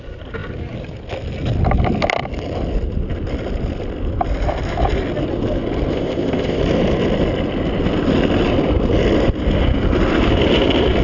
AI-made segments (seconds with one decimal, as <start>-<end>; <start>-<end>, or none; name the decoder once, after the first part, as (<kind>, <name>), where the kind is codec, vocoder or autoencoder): 5.9-6.6 (codec, ZipCodec)